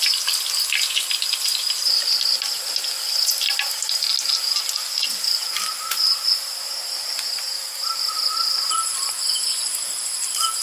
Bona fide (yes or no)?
yes